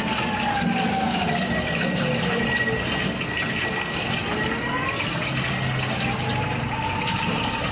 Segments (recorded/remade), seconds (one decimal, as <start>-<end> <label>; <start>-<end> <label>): 0.0-0.9 recorded; 0.9-1.5 remade; 1.5-7.7 recorded